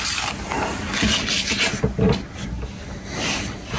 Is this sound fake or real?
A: real